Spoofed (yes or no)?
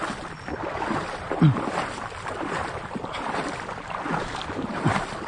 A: yes